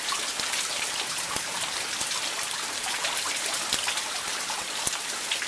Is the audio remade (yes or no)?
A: no